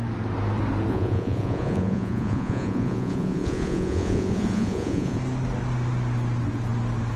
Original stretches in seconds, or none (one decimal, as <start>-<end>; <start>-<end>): 0.0-0.9; 5.2-7.2

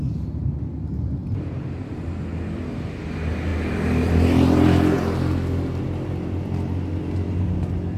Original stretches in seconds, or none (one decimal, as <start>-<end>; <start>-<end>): 0.0-8.0

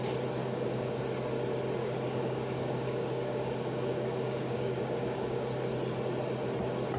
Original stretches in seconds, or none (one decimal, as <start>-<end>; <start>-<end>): 0.0-0.4; 1.0-1.8; 5.5-7.0

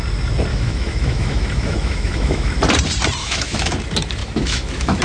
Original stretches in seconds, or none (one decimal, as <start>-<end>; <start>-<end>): 0.0-0.5; 2.5-3.2; 3.8-4.2

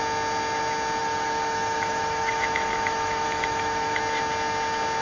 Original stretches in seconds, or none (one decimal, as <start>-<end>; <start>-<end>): 0.0-1.0; 4.0-5.0

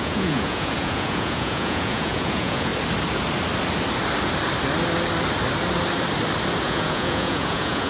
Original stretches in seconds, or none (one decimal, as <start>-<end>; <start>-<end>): 2.7-6.6

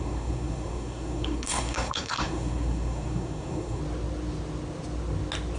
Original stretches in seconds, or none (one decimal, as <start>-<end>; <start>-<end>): 3.8-5.6

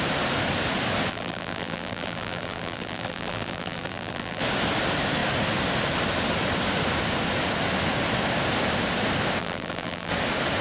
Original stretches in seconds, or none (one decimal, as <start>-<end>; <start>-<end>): 0.0-1.1; 4.4-9.4; 10.1-10.6